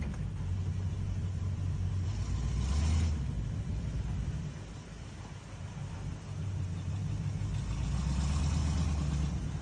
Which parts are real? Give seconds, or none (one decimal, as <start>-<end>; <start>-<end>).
0.0-9.6

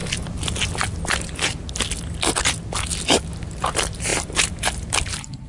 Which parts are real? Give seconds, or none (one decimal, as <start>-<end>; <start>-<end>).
0.0-3.3

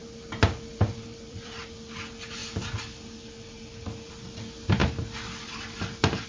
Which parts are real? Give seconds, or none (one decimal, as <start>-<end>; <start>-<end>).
1.6-6.3